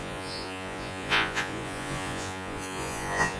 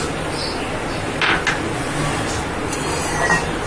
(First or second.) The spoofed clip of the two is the first